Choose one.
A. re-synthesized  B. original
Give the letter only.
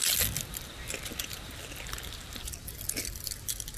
B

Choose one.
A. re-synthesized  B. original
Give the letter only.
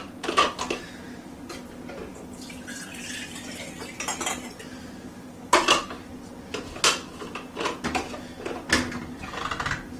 B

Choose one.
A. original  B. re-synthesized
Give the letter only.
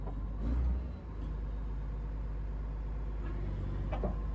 A